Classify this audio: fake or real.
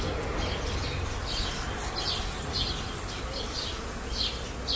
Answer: real